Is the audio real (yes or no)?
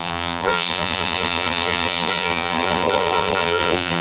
no